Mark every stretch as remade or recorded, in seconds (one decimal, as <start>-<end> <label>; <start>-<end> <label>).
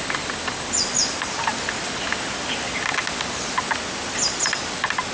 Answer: 0.0-5.1 recorded